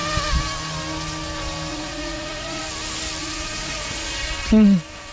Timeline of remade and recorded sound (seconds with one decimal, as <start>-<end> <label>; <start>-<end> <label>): 0.0-1.7 recorded; 1.7-2.6 remade; 2.6-3.2 recorded; 3.2-4.3 remade; 4.3-5.1 recorded